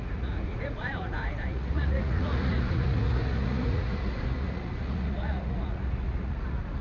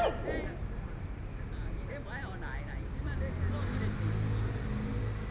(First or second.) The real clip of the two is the second